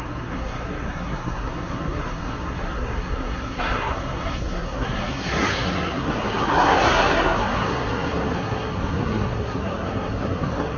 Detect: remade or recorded remade